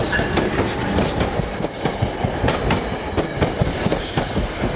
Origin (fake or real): real